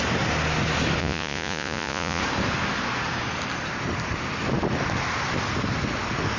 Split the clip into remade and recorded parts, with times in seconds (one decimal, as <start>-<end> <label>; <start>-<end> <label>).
0.0-1.0 recorded; 1.0-2.2 remade; 2.2-6.4 recorded